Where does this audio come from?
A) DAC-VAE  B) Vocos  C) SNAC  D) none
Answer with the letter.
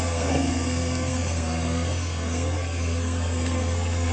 C